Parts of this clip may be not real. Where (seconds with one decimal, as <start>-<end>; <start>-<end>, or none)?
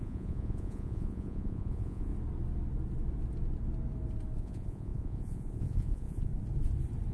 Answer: 0.0-2.1; 4.4-6.3